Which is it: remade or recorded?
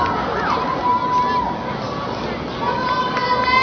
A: recorded